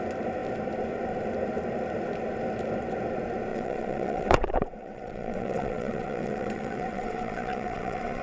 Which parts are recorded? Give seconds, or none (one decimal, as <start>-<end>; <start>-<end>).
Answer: 0.0-3.5